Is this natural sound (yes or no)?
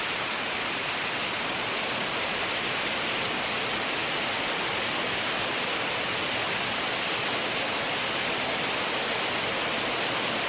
yes